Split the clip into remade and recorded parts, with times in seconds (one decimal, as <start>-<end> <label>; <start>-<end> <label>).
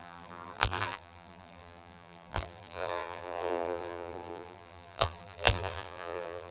0.0-6.5 remade